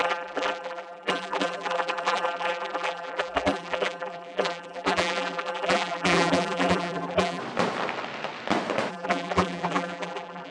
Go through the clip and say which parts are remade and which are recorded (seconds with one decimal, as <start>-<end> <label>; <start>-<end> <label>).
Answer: 0.0-7.4 remade; 7.4-8.9 recorded; 8.9-10.5 remade